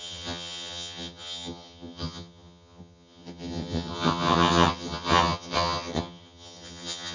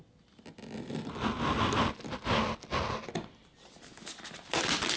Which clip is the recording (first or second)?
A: second